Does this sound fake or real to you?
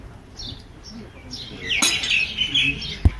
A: real